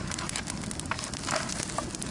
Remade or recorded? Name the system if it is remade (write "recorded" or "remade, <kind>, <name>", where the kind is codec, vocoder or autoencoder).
recorded